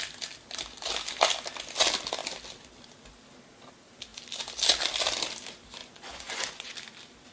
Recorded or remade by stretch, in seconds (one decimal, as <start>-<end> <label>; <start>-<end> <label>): 0.0-5.8 recorded; 5.8-6.7 remade; 6.7-7.3 recorded